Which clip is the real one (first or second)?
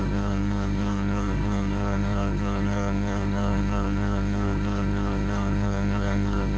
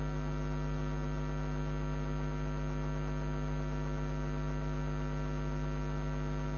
second